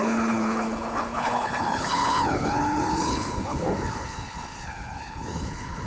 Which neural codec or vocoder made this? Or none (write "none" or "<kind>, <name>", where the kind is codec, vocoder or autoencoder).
codec, HILCodec